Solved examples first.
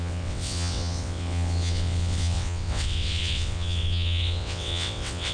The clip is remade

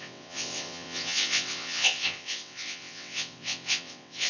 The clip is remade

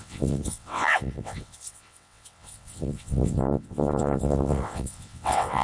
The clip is remade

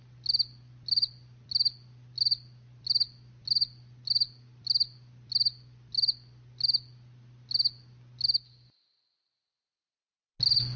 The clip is recorded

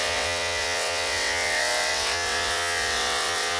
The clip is remade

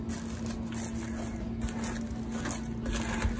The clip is recorded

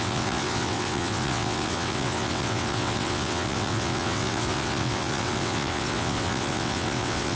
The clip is remade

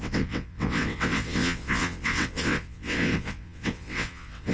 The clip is remade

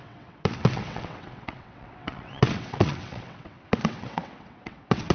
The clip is remade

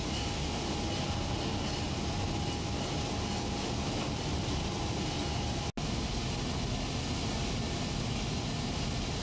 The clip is recorded